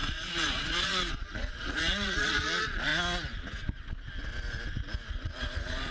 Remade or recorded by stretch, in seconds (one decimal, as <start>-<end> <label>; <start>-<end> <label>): 0.0-2.9 remade; 2.9-5.1 recorded; 5.1-5.9 remade